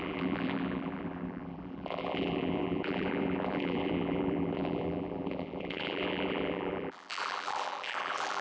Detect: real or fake fake